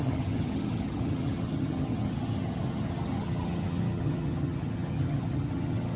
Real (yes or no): no